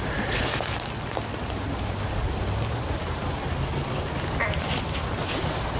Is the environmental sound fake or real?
real